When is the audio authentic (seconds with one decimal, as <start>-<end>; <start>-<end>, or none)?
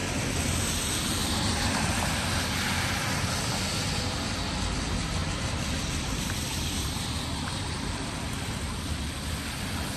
0.7-1.2; 1.9-5.2; 9.3-10.0